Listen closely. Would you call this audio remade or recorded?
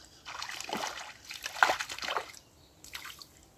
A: recorded